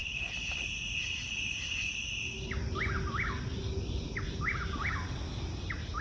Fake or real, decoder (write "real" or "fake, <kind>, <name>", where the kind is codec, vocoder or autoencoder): real